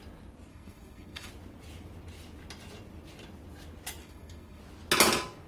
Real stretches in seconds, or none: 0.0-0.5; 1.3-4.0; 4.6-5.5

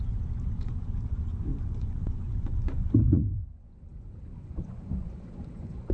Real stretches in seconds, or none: none

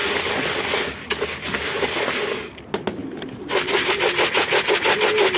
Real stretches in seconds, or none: 0.0-5.4